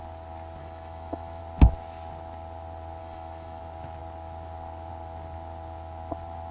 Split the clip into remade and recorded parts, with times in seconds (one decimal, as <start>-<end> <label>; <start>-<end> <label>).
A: 0.0-0.6 recorded; 0.6-1.4 remade; 1.4-3.0 recorded; 3.0-3.6 remade; 3.6-6.5 recorded